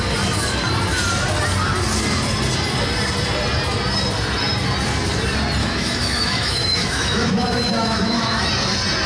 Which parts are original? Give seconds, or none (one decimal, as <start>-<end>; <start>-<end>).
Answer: 0.0-5.6; 8.5-9.1